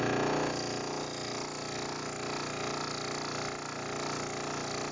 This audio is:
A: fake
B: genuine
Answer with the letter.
B